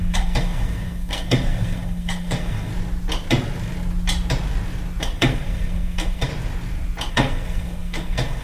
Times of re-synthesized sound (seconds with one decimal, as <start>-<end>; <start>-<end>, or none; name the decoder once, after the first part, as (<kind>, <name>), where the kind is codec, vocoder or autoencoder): 0.0-2.7 (codec, SNAC); 5.0-6.3; 7.1-8.4